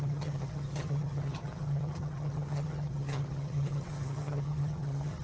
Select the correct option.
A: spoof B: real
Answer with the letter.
A